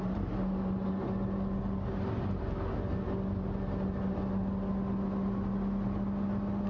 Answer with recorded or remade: recorded